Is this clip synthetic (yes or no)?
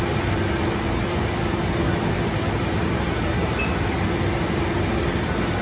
no